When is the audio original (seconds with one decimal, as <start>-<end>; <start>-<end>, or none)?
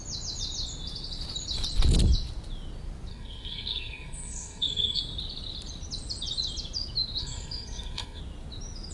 0.0-3.1; 5.0-7.2; 8.2-8.9